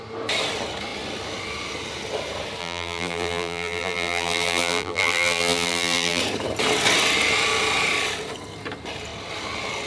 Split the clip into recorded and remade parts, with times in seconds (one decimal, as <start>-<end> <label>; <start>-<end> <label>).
0.0-2.6 recorded; 2.6-6.2 remade; 6.2-9.9 recorded